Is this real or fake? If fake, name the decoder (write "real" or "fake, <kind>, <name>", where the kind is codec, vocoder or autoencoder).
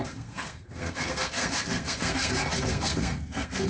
fake, codec, SNAC